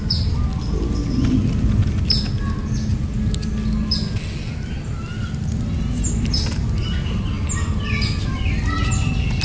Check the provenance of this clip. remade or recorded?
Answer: recorded